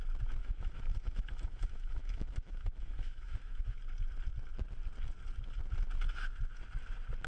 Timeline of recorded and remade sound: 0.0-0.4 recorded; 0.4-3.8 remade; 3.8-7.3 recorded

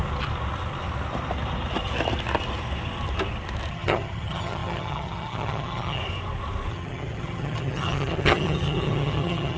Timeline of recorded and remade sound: 0.0-3.7 recorded; 3.7-6.0 remade; 6.0-6.7 recorded; 6.7-9.6 remade

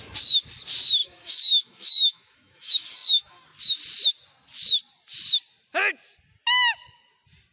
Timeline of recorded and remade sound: 0.0-1.0 recorded; 1.0-3.3 remade; 3.3-7.5 recorded

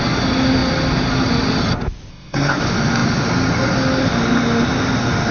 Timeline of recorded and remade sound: 0.0-2.1 recorded; 2.1-2.6 remade; 2.6-5.3 recorded

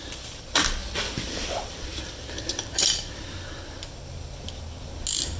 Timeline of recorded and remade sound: 0.0-0.8 remade; 0.8-1.5 recorded; 1.5-3.2 remade; 3.2-5.4 recorded

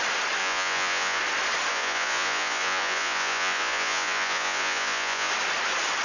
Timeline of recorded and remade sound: 0.0-0.4 recorded; 0.4-1.2 remade; 1.2-1.7 recorded; 1.7-5.3 remade; 5.3-6.0 recorded

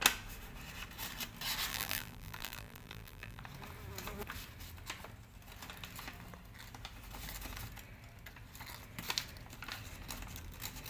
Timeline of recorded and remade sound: 0.0-1.7 recorded; 1.7-3.4 remade; 3.4-10.9 recorded

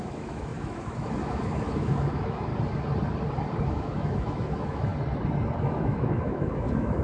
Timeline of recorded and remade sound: 0.0-2.5 remade; 2.5-3.6 recorded; 3.6-4.9 remade; 4.9-5.6 recorded; 5.6-7.0 remade